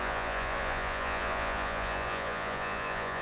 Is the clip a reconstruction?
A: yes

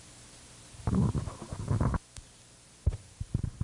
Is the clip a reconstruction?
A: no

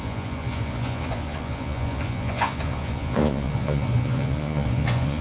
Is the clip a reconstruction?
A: yes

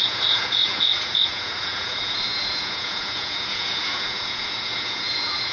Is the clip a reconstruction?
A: yes